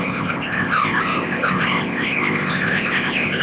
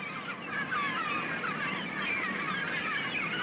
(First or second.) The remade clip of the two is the first